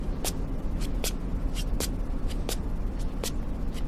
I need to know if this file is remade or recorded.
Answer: recorded